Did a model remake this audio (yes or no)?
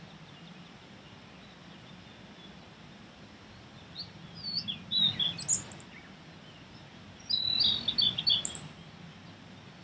no